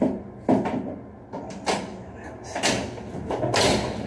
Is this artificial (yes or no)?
no